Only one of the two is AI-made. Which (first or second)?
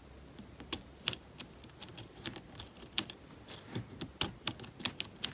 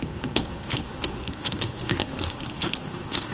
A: second